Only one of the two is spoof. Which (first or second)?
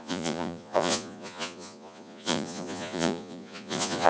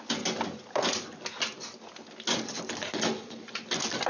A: first